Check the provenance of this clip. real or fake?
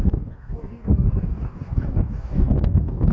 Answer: fake